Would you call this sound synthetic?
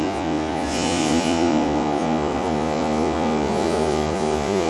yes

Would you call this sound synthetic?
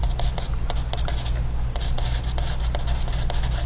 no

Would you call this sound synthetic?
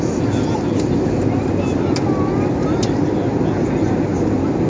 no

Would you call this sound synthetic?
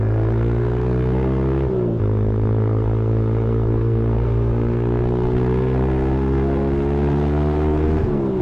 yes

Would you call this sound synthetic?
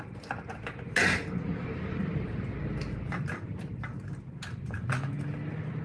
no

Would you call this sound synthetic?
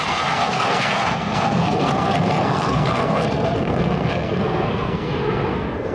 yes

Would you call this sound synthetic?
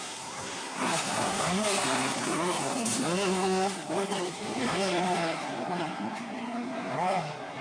yes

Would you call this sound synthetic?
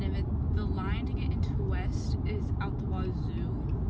no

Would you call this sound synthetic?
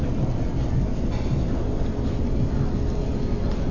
no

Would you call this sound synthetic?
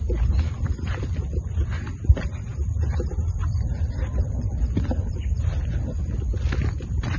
no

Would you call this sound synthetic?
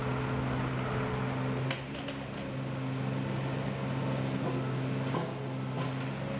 no